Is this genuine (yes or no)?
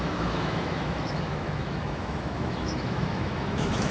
no